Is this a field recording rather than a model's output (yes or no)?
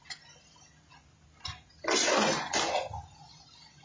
yes